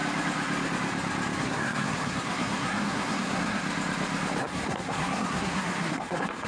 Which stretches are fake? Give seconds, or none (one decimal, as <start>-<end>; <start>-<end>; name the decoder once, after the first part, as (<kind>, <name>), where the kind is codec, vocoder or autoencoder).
1.4-3.6 (codec, SNAC); 4.4-6.5